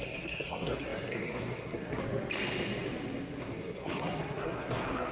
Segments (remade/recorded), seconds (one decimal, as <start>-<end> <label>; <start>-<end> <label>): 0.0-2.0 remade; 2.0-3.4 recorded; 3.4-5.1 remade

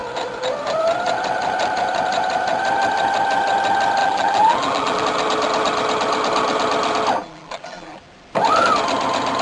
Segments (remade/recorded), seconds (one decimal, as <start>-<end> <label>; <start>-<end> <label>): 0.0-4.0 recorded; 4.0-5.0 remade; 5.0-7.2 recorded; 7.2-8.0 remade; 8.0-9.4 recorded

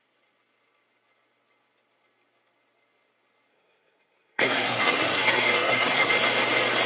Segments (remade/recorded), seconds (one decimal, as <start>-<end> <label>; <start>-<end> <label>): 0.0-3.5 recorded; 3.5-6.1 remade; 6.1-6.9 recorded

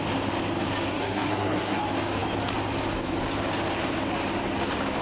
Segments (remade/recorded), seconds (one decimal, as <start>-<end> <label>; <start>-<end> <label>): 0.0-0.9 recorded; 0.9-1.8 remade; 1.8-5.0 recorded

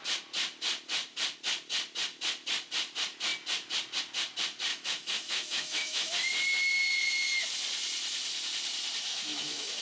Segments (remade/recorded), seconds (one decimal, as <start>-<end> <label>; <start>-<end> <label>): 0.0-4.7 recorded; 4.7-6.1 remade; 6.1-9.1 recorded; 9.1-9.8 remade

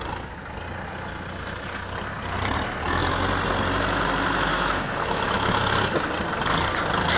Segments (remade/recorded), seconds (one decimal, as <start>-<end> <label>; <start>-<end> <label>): 0.0-4.5 recorded; 4.5-5.6 remade; 5.6-7.2 recorded